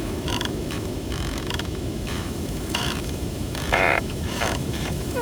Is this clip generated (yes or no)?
yes